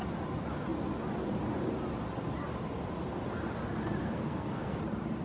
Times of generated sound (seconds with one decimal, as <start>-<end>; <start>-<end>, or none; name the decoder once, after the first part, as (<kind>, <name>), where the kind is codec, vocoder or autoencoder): 4.0-4.8 (codec, SNAC)